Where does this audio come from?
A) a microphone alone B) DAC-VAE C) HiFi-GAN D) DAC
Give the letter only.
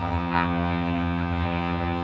C